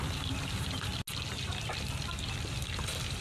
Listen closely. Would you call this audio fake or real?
real